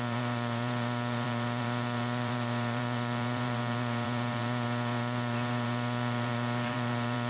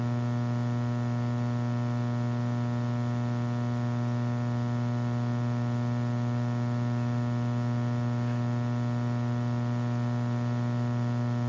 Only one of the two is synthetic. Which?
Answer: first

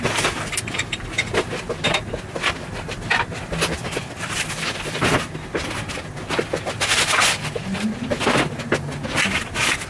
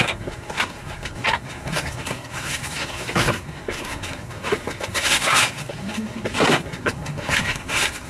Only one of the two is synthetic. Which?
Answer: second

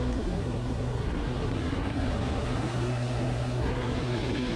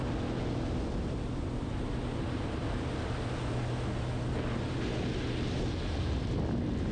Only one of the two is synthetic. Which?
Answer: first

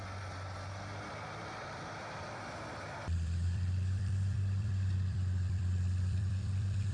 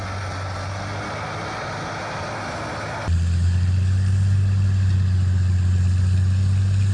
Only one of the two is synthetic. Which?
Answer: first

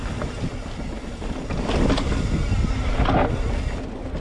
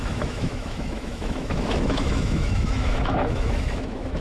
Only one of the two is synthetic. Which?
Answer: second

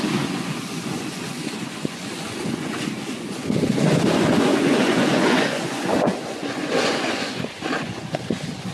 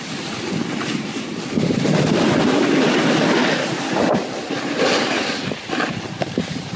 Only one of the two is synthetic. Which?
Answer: first